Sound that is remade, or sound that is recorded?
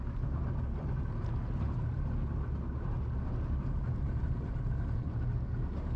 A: recorded